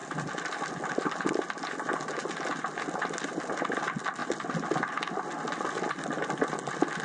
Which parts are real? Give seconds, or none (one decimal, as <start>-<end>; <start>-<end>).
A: 0.7-7.0

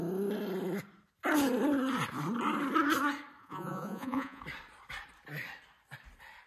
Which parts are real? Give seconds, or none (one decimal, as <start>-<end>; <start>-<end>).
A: 0.0-3.4; 4.4-6.5

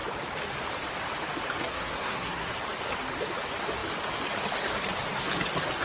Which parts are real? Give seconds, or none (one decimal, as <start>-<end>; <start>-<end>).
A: 0.0-1.6; 2.5-5.8

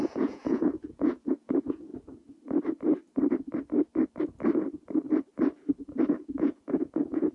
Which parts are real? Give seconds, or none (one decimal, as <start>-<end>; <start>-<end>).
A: 1.9-6.1

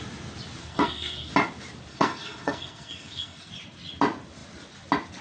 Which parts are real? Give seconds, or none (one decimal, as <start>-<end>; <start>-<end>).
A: 0.0-0.6; 1.3-1.9; 3.5-5.2

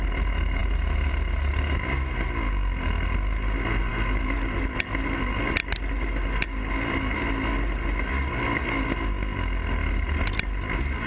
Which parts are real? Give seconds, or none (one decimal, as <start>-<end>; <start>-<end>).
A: 0.0-11.1

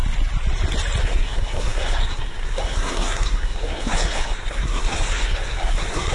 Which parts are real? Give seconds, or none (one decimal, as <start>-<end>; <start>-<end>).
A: 0.0-1.0